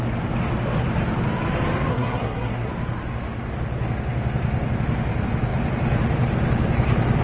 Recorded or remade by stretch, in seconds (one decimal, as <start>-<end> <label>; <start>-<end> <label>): 0.0-1.9 recorded; 1.9-2.7 remade; 2.7-7.2 recorded